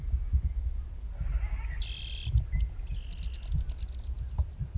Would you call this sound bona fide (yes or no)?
yes